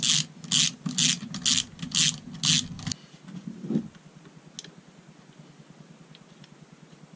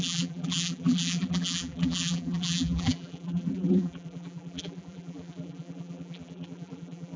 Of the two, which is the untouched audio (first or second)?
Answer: first